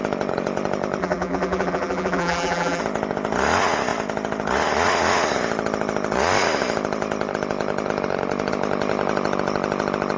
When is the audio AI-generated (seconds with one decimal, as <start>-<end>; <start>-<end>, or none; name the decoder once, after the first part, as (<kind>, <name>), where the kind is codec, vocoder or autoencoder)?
1.0-2.8 (vocoder, BigVGAN v2)